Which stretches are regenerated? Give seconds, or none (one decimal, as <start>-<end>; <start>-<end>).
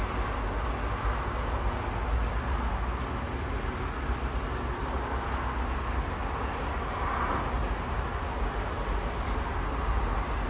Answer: none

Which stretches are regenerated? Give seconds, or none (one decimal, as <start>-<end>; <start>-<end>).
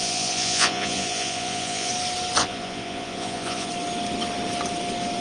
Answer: 0.0-1.9; 2.4-3.7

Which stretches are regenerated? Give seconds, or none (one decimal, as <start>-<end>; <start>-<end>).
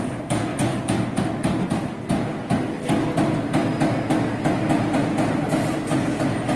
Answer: 0.5-1.2